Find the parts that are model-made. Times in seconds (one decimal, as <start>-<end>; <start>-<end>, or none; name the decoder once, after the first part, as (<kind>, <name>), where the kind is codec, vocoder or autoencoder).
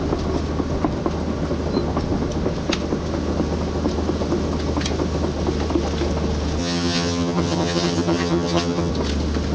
6.6-8.9 (vocoder, HiFi-GAN)